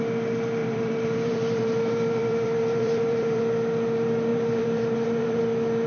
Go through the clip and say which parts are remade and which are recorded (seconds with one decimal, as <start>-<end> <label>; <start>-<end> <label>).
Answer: 0.0-0.6 recorded; 0.6-3.4 remade; 3.4-4.3 recorded; 4.3-5.4 remade; 5.4-5.9 recorded